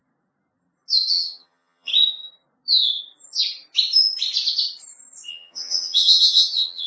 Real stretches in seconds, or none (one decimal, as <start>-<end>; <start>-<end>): 0.0-1.1; 1.9-5.3